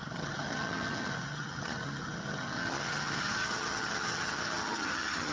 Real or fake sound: fake